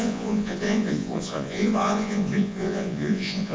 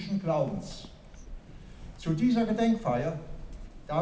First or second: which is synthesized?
first